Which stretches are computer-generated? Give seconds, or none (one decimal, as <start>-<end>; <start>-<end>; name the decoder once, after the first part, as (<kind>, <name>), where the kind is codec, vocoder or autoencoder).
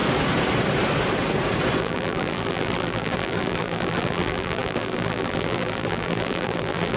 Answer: 1.8-7.0 (vocoder, BigVGAN v2)